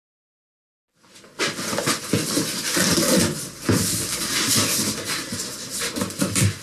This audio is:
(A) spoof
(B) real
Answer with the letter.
B